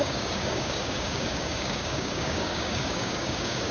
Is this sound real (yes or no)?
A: no